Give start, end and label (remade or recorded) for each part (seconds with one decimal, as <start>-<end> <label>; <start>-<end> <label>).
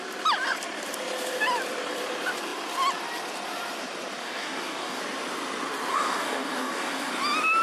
0.0-4.2 recorded; 4.2-5.0 remade; 5.0-5.9 recorded; 5.9-7.1 remade; 7.1-7.6 recorded